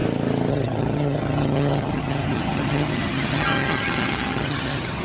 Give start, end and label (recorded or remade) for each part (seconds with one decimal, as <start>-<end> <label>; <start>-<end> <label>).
0.0-0.5 recorded; 0.5-5.0 remade